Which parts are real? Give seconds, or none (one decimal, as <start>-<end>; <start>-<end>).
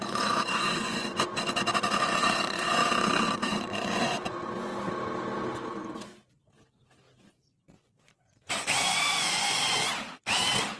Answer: 2.8-3.6; 4.7-7.3; 9.9-10.8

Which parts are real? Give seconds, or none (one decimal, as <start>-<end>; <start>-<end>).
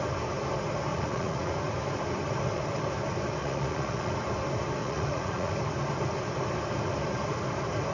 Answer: 0.0-0.9; 1.5-3.4; 4.1-4.8; 5.5-7.9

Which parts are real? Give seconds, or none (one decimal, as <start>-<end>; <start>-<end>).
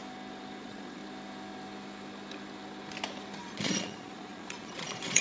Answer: 0.0-0.6; 1.0-3.4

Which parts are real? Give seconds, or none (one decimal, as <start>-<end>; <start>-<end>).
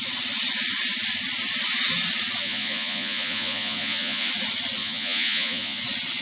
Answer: 0.0-2.4; 4.3-4.8; 5.8-6.2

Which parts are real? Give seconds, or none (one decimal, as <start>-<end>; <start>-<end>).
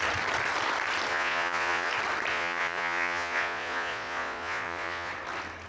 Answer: 0.0-1.1; 1.9-2.3; 5.1-5.7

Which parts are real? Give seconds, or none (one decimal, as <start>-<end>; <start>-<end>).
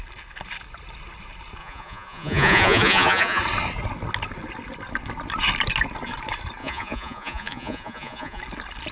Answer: 0.0-1.6; 3.4-6.6; 8.4-8.9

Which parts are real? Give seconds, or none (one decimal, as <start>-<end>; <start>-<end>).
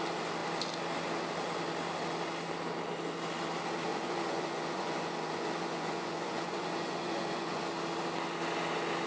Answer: 0.0-3.9; 7.6-9.1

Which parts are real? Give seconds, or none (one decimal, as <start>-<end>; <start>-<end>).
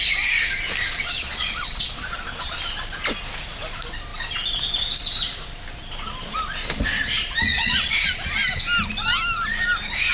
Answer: 0.0-0.9; 2.6-7.5; 8.1-10.1